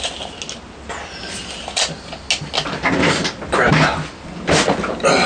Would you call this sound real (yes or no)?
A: yes